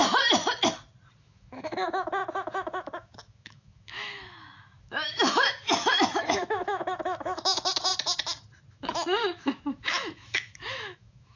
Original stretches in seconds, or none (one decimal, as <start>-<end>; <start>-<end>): 0.0-1.2; 7.9-8.7